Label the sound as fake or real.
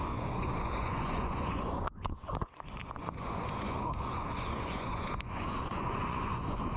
fake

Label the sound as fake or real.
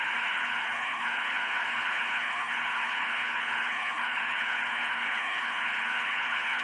fake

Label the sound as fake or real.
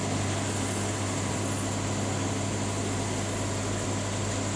real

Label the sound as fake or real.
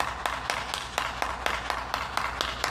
real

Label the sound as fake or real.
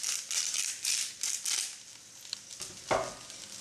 real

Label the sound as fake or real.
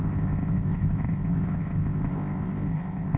fake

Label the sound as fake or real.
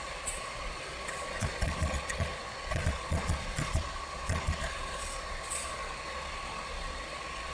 fake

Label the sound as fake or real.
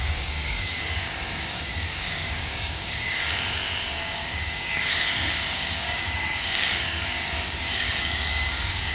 fake